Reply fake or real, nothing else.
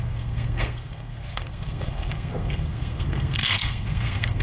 fake